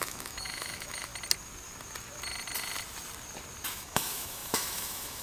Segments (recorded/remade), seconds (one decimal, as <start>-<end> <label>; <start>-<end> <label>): 0.0-1.1 remade; 1.1-3.7 recorded; 3.7-5.2 remade